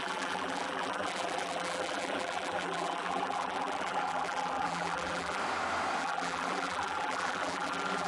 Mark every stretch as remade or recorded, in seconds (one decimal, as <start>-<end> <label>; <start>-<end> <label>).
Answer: 0.0-5.4 remade; 5.4-6.0 recorded; 6.0-8.1 remade